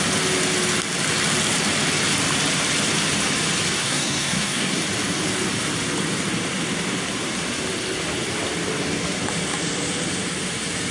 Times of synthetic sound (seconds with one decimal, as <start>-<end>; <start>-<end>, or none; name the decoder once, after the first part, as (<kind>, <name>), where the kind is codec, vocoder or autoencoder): 3.8-4.8 (codec, SNAC)